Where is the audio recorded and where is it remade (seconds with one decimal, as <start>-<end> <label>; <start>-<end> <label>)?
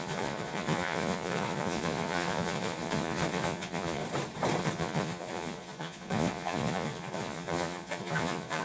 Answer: 0.0-4.0 remade; 4.0-4.6 recorded; 4.6-8.6 remade